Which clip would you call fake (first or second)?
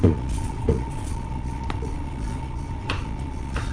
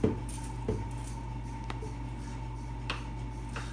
first